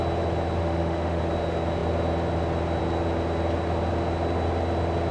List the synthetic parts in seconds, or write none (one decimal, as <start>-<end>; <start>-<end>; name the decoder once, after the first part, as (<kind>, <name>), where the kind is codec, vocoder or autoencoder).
0.6-1.2 (autoencoder, DAC-VAE)